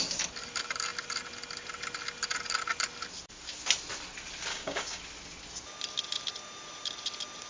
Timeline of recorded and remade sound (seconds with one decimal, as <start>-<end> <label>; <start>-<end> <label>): 0.0-4.5 recorded; 4.5-5.0 remade; 5.0-7.5 recorded